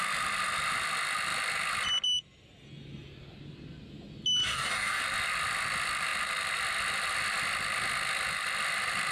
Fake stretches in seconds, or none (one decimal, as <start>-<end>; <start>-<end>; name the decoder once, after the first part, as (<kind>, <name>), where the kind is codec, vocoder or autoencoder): 4.4-5.0 (codec, DAC)